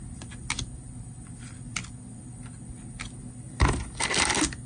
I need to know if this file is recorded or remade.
recorded